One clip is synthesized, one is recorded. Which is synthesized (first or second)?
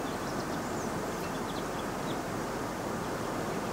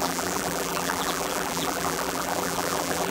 second